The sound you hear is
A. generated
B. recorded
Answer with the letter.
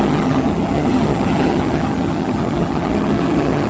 A